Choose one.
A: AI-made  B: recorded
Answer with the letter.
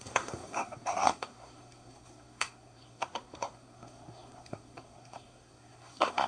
A